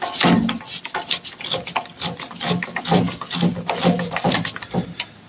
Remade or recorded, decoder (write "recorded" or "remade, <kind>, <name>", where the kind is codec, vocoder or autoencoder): recorded